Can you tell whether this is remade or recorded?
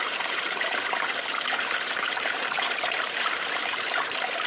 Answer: remade